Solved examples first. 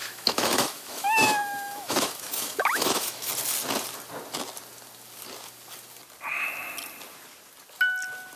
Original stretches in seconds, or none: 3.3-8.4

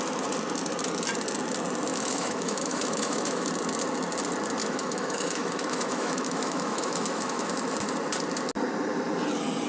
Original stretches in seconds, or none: 0.0-1.9; 3.5-4.6; 7.5-9.7

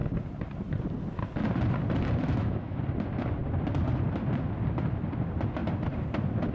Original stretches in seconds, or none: 0.0-2.2; 2.8-6.5

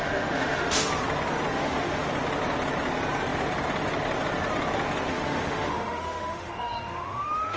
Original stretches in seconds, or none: 0.9-1.5; 2.1-5.1

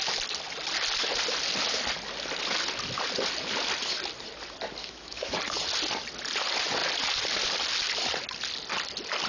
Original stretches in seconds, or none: 0.0-4.8; 5.4-9.3